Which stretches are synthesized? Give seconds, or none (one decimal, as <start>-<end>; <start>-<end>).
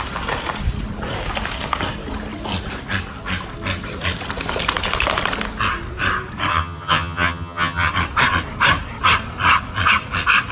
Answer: 6.5-7.9